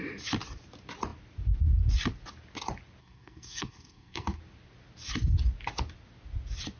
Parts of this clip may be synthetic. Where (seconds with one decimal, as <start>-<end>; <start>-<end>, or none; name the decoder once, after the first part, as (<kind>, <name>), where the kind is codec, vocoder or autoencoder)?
3.0-4.4 (codec, SNAC)